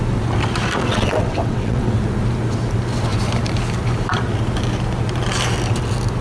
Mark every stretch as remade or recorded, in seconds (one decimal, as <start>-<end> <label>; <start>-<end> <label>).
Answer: 0.0-0.8 recorded; 0.8-1.9 remade; 1.9-6.2 recorded

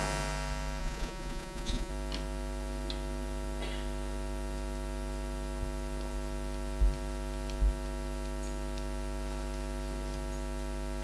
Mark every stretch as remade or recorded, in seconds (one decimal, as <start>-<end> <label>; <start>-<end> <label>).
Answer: 0.0-0.8 recorded; 0.8-1.9 remade; 1.9-11.0 recorded

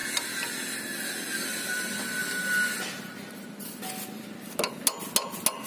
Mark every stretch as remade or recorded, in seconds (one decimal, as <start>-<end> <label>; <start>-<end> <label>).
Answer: 0.0-5.7 recorded

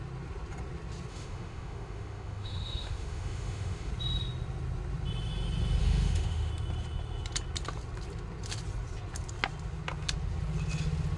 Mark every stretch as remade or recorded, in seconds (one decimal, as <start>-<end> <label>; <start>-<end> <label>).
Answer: 0.0-1.1 recorded; 1.1-3.9 remade; 3.9-5.8 recorded; 5.8-6.5 remade; 6.5-11.2 recorded